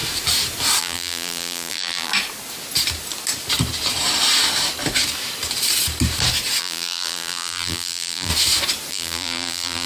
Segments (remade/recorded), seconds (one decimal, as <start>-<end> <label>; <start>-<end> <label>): 0.0-0.8 recorded; 0.8-2.1 remade; 2.1-6.6 recorded; 6.6-8.3 remade; 8.3-8.9 recorded; 8.9-9.9 remade